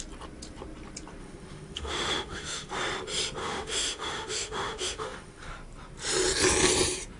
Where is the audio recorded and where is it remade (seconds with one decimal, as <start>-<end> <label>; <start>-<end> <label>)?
0.0-1.2 recorded; 1.2-2.7 remade; 2.7-3.4 recorded; 3.4-5.5 remade; 5.5-7.2 recorded